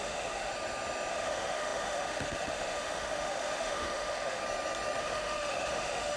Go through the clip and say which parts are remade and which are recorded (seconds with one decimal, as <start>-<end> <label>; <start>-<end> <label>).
0.0-0.5 remade; 0.5-1.1 recorded; 1.1-4.4 remade; 4.4-5.0 recorded; 5.0-6.2 remade